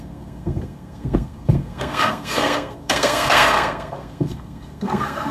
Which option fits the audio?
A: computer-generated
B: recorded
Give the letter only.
A